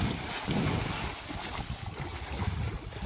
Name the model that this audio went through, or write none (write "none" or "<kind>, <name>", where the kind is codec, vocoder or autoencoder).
none